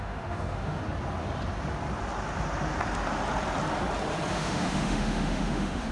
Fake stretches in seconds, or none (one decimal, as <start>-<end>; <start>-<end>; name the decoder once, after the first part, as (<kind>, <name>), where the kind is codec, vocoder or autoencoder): 0.0-0.8 (autoencoder, DAC-VAE); 4.3-5.9